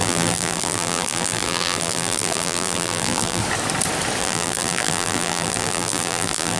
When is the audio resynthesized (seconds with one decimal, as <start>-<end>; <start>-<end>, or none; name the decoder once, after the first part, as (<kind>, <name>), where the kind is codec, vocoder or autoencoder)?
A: 0.0-3.4 (vocoder, BigVGAN v2); 4.2-6.6